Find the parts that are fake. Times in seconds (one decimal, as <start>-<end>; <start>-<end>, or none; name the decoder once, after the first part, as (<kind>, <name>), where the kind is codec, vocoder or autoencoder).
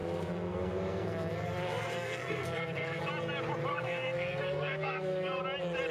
0.0-3.0 (codec, SNAC); 3.7-5.4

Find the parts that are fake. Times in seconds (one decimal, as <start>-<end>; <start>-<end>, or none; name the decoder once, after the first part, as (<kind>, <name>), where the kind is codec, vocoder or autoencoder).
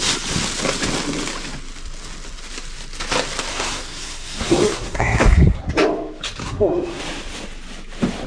3.5-5.6 (codec, SNAC); 6.4-7.0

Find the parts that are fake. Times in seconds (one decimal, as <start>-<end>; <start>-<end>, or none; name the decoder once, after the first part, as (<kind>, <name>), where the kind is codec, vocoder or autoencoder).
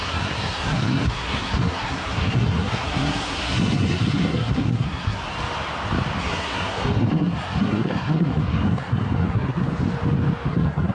0.0-5.2 (codec, SNAC); 6.2-9.6; 10.5-10.9